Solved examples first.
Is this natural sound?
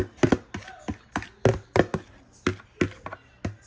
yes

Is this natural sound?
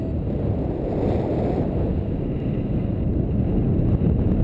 yes